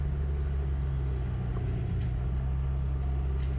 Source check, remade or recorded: recorded